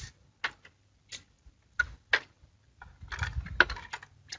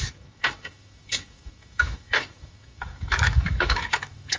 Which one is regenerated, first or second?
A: second